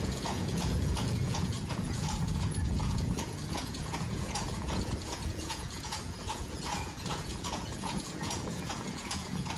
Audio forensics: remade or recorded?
remade